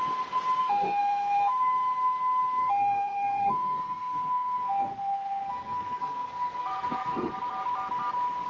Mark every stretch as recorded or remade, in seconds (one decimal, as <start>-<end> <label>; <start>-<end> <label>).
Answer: 0.0-0.6 recorded; 0.6-1.5 remade; 1.5-2.6 recorded; 2.6-7.3 remade; 7.3-8.5 recorded